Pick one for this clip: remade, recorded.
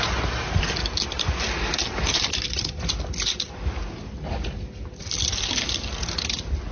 recorded